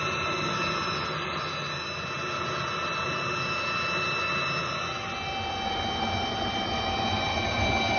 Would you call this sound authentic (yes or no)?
yes